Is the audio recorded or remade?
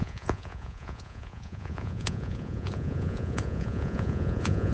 remade